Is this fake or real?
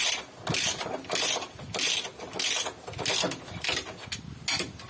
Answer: real